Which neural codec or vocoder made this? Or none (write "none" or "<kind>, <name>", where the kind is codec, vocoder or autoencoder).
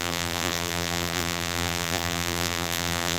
vocoder, BigVGAN v2